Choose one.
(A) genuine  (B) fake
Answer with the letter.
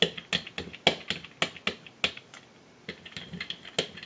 A